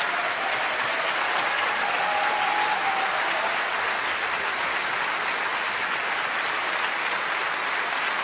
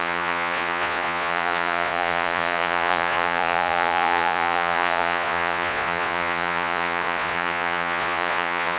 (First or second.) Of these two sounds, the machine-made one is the second